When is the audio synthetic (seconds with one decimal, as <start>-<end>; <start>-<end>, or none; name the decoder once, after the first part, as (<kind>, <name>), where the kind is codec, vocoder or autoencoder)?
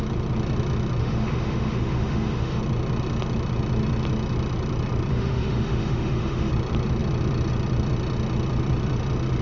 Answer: 1.0-2.6 (autoencoder, DAC-VAE); 5.1-6.5